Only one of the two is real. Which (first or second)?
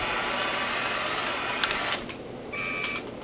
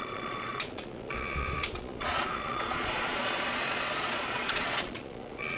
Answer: first